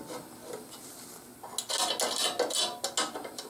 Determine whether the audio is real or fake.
real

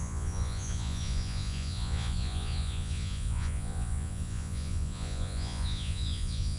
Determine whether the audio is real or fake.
fake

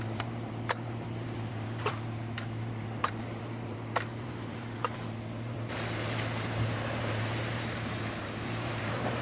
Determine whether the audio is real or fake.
fake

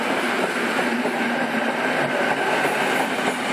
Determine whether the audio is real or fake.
real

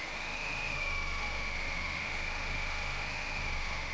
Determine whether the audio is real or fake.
fake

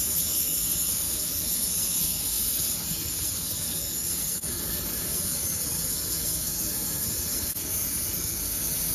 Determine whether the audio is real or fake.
fake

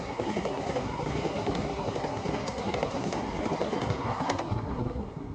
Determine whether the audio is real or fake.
fake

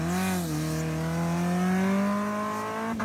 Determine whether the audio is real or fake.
real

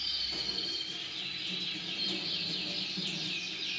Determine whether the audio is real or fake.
real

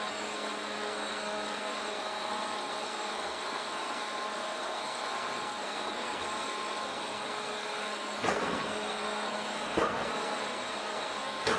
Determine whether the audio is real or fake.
fake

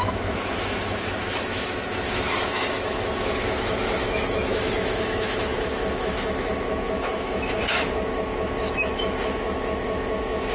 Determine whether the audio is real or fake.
fake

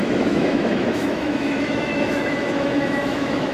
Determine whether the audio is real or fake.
fake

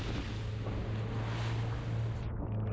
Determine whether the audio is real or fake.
real